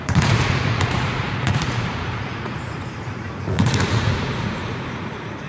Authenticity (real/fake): fake